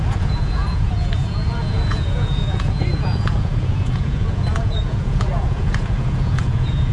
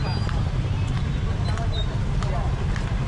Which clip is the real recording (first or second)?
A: second